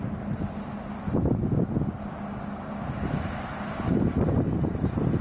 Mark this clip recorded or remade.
recorded